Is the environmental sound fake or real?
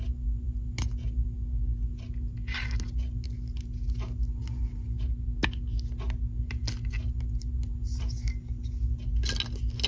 real